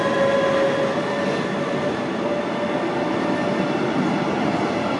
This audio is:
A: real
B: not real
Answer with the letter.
A